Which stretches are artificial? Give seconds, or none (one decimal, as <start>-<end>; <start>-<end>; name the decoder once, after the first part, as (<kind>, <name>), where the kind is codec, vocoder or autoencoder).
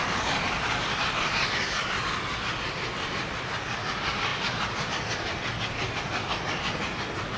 none